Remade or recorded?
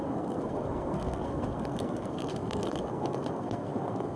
remade